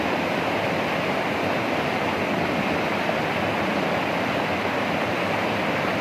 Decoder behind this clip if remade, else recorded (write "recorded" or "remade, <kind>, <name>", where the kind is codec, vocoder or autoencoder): recorded